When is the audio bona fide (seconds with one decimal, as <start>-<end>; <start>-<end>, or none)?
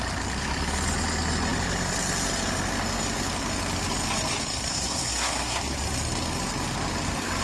0.0-4.7; 5.6-7.4